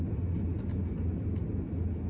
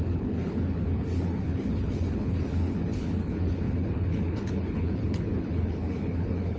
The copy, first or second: second